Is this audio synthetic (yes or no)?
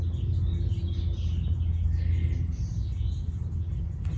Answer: no